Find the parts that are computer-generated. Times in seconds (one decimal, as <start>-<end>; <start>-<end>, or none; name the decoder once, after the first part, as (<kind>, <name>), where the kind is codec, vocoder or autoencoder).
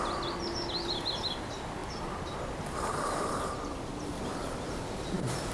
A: none